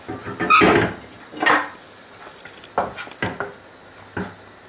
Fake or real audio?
real